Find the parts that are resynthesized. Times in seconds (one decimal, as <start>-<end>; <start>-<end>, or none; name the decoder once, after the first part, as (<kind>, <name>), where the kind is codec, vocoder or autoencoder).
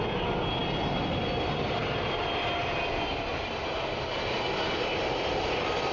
1.8-2.9 (vocoder, BigVGAN v2); 3.3-4.0